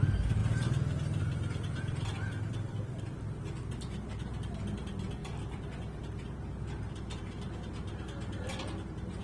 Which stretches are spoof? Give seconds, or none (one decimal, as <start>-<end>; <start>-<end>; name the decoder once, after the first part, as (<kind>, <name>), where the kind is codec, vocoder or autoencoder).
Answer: none